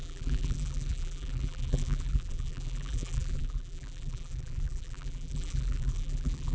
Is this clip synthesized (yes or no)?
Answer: yes